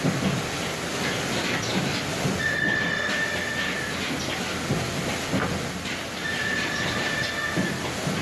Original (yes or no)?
no